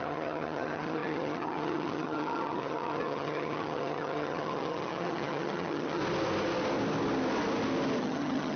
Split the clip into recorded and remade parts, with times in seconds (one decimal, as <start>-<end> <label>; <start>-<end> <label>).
0.0-6.0 remade; 6.0-8.0 recorded; 8.0-8.6 remade

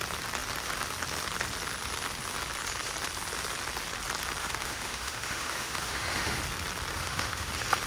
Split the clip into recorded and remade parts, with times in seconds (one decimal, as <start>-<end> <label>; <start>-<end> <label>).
0.0-4.4 recorded; 4.4-6.4 remade; 6.4-6.9 recorded; 6.9-7.5 remade; 7.5-7.9 recorded

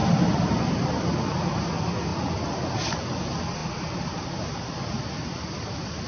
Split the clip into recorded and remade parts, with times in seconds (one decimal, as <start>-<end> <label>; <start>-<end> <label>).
0.0-6.1 recorded